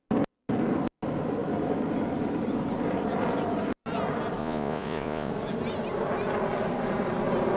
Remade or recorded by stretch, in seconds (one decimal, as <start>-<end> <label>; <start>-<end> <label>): 0.0-4.4 recorded; 4.4-5.3 remade; 5.3-7.6 recorded